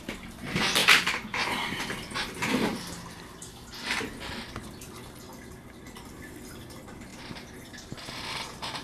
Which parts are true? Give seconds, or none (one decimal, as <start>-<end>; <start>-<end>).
0.0-0.8; 1.8-7.1; 7.7-8.8